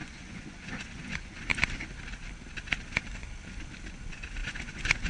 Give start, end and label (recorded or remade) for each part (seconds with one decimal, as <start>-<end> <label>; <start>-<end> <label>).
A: 0.0-1.5 remade; 1.5-3.9 recorded; 3.9-5.1 remade